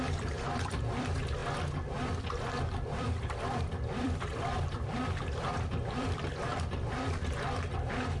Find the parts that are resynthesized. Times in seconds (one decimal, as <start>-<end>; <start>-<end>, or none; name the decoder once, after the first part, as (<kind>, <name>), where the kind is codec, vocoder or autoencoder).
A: 0.0-1.4 (vocoder, BigVGAN v2); 2.7-8.2